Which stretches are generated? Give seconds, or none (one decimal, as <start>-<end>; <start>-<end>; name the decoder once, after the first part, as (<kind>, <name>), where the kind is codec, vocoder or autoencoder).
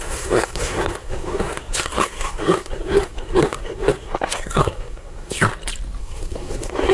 0.0-5.5 (codec, SNAC); 6.0-6.9